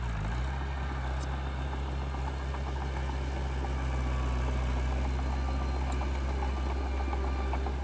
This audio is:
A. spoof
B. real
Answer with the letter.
B